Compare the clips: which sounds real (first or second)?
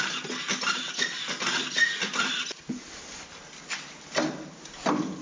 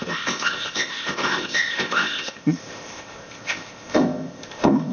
first